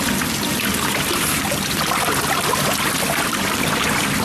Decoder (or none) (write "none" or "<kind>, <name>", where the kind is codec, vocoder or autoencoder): none